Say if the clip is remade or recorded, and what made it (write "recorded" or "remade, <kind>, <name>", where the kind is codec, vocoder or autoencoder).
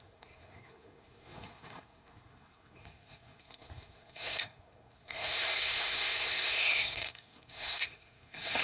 remade, codec, SNAC